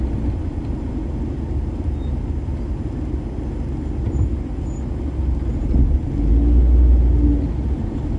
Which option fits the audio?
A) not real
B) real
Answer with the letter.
B